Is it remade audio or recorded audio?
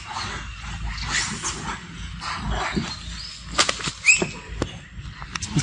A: recorded